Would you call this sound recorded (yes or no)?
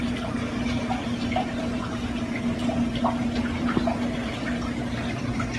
yes